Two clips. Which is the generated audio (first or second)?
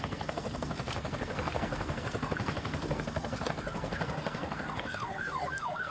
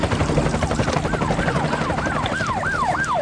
first